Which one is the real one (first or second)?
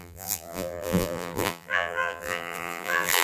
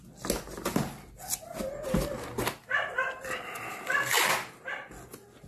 second